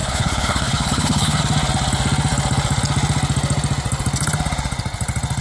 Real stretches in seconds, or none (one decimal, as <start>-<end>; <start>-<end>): 1.4-5.4